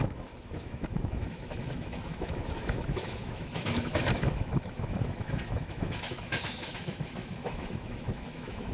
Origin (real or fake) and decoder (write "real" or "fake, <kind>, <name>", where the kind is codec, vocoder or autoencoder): fake, autoencoder, DAC-VAE